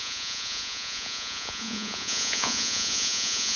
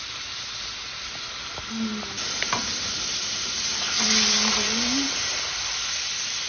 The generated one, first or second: first